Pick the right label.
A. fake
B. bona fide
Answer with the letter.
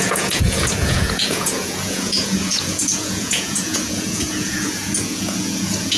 A